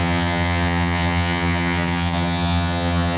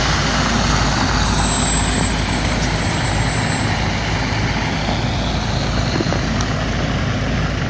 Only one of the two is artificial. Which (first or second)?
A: first